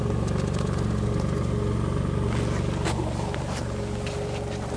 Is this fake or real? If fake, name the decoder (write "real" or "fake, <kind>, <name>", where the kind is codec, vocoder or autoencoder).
real